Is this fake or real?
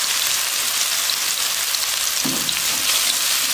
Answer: real